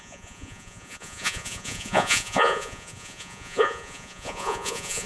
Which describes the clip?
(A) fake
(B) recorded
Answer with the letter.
A